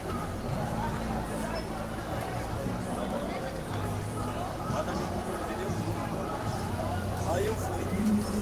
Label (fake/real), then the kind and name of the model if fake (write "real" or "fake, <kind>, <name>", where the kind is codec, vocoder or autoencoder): fake, vocoder, BigVGAN v2